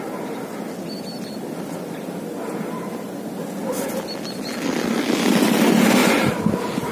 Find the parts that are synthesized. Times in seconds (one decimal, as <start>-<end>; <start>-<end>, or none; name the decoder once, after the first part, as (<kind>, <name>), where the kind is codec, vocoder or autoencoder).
6.0-6.5 (vocoder, BigVGAN v2)